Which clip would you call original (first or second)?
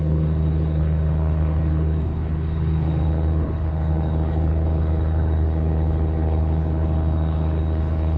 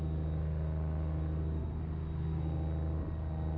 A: second